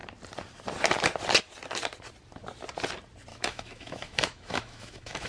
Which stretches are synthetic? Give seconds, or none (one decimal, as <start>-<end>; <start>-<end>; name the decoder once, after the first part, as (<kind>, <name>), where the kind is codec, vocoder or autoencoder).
3.3-5.3 (autoencoder, DAC-VAE)